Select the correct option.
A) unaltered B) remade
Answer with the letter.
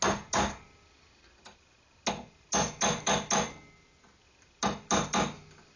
A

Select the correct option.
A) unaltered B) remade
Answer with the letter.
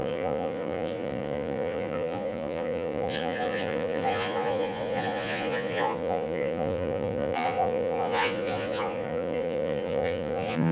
B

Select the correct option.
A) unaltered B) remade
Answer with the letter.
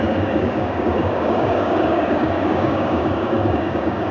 B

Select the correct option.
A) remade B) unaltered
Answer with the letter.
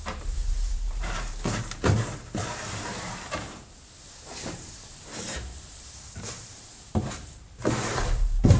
A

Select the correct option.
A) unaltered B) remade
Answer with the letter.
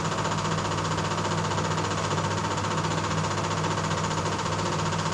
A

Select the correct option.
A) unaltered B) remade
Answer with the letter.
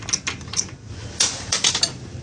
A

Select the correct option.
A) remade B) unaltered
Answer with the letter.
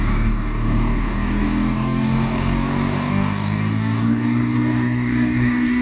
A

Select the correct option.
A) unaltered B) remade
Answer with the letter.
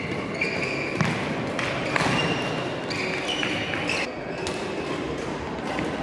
A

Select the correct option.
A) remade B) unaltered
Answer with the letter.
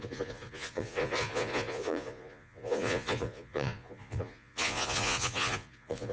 A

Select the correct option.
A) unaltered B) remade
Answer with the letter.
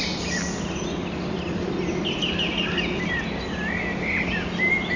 A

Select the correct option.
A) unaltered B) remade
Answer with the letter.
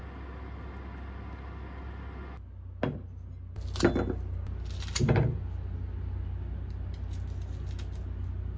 A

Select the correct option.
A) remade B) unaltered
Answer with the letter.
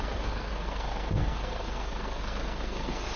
A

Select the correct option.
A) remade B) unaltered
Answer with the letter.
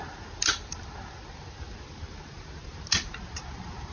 B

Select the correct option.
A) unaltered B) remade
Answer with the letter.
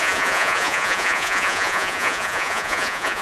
B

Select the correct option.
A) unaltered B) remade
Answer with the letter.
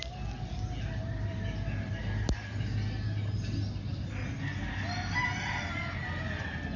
A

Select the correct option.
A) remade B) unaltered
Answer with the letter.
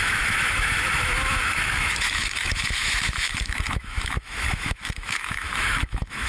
A